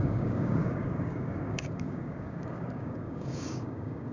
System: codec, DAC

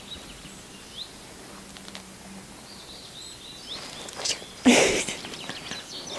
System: none